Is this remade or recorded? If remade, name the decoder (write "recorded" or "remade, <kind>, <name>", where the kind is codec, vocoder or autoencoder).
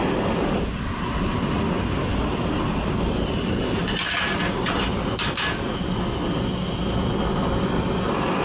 recorded